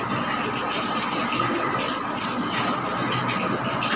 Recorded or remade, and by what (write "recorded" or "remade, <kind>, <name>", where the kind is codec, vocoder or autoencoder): recorded